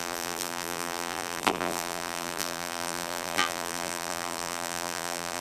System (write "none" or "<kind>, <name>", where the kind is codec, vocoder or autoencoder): vocoder, BigVGAN v2